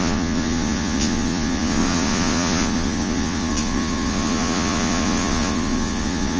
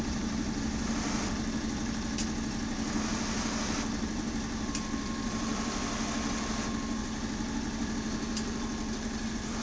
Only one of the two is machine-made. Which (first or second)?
first